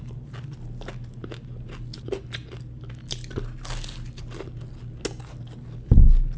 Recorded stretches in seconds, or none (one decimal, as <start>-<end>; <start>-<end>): 0.0-6.4